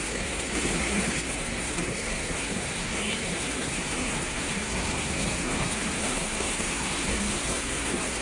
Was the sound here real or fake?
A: fake